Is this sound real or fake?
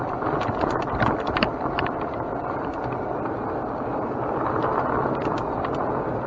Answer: real